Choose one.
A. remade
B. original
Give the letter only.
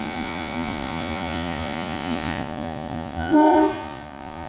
A